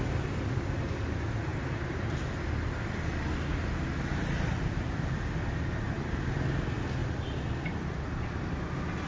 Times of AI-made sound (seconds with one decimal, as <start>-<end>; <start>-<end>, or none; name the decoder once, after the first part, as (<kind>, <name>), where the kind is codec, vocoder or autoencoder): 1.5-2.2 (vocoder, BigVGAN v2); 3.5-5.1; 7.0-8.6